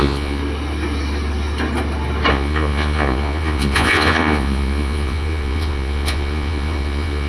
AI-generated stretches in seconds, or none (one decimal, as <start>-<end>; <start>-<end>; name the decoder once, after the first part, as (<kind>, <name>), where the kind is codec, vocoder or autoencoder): 0.0-0.4 (vocoder, Vocos); 2.3-7.3